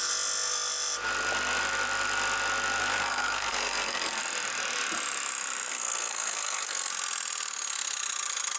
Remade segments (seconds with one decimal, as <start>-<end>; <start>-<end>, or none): 2.8-4.2; 5.7-6.9